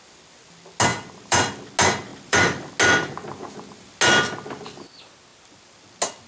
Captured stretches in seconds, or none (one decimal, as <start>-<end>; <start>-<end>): 0.0-0.9; 1.7-2.1; 2.7-6.3